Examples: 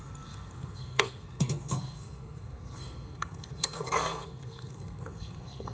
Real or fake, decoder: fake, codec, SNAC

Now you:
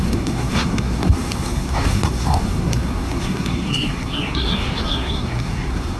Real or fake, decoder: fake, codec, SNAC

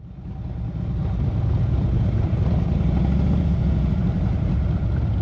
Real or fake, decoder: real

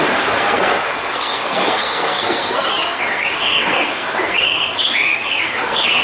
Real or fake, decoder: fake, codec, SNAC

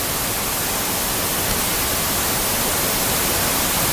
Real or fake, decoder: real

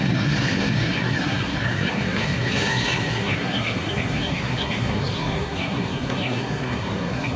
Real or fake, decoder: fake, codec, SNAC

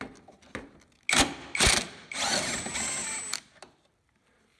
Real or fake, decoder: real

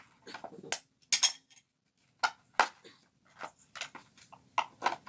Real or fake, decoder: real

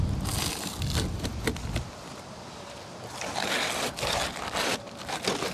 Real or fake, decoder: real